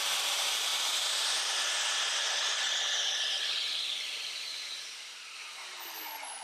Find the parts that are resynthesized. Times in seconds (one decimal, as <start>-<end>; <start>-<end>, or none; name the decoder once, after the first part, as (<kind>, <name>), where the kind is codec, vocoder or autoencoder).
none